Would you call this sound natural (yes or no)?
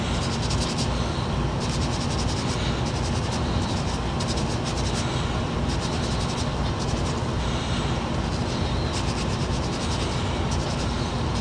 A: yes